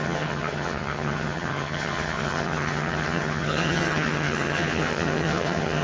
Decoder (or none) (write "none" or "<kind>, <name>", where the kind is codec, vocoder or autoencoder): vocoder, HiFi-GAN